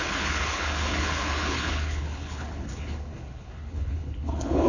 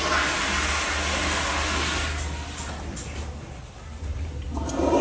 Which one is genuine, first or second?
second